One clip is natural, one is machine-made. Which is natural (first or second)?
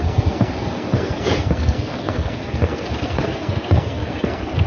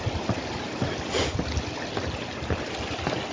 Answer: second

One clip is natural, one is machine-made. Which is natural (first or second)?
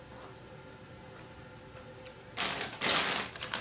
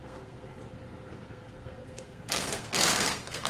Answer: first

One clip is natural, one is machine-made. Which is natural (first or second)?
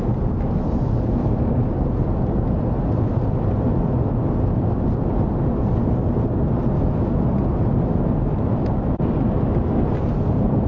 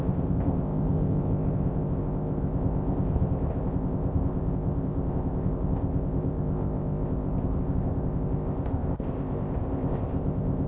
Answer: first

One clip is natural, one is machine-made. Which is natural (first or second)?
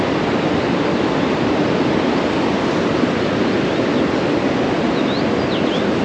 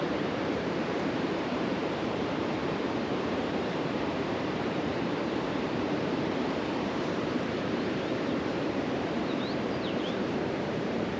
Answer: first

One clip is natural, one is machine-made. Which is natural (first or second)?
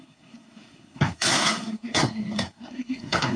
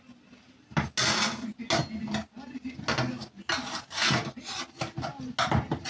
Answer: second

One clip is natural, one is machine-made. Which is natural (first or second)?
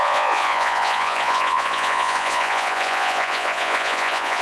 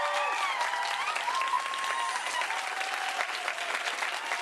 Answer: second